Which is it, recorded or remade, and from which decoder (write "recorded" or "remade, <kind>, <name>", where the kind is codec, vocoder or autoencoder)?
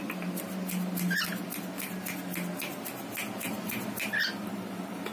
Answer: recorded